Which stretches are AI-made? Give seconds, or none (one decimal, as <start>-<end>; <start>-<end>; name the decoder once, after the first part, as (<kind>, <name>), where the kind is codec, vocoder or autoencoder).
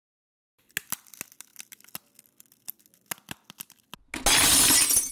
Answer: none